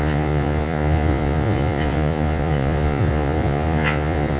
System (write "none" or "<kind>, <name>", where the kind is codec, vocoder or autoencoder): vocoder, Vocos